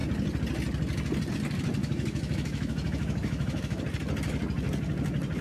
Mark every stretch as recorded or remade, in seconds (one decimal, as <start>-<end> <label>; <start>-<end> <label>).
0.0-1.8 recorded; 1.8-3.8 remade; 3.8-5.4 recorded